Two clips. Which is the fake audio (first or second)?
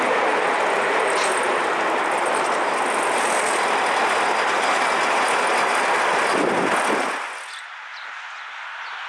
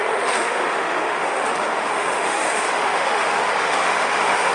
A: second